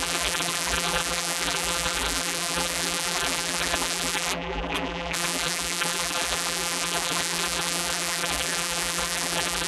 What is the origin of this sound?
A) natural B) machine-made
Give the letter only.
B